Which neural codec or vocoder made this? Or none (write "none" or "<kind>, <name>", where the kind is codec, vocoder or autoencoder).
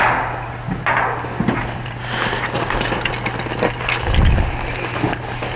none